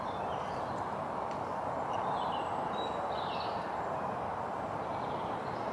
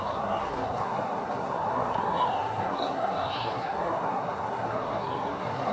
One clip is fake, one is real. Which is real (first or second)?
first